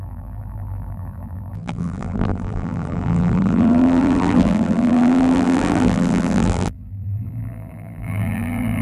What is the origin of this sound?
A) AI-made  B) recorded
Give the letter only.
A